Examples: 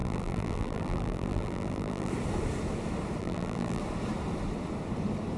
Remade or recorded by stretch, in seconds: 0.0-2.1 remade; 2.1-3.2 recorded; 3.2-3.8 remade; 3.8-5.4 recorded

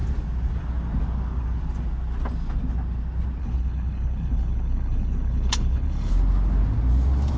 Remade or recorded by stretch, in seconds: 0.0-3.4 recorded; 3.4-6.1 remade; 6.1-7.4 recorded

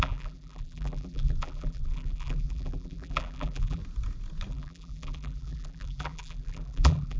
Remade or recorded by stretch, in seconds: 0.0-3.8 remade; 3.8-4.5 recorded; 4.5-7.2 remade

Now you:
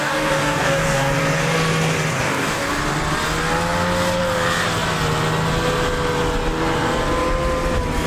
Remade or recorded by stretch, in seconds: 0.0-1.1 remade; 1.1-2.2 recorded; 2.2-2.7 remade; 2.7-8.1 recorded

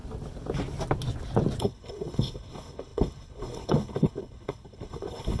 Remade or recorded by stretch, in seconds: 0.0-1.6 recorded; 1.6-5.4 remade